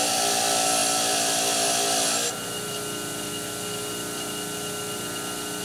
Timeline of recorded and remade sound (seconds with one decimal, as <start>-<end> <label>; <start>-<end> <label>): 0.0-5.6 recorded